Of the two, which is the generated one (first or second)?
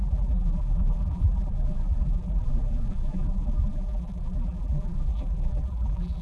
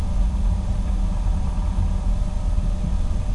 first